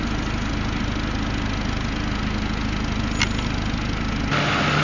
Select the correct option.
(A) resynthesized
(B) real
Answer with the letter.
B